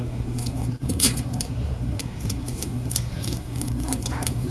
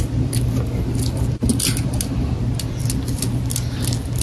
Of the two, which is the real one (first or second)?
second